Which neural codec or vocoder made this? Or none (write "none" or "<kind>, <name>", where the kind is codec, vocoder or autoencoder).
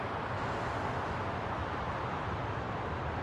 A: none